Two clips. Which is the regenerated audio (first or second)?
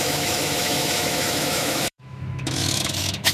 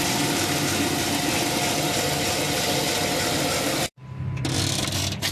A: first